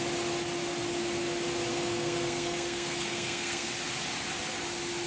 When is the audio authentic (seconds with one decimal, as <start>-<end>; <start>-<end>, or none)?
0.0-1.7; 3.7-5.1